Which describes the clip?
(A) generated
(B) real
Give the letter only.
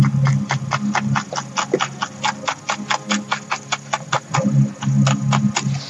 B